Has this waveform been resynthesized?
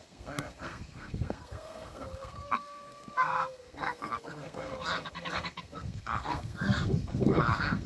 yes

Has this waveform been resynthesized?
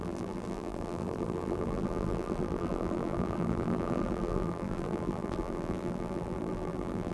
yes